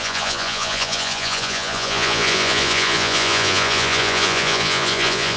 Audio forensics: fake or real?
fake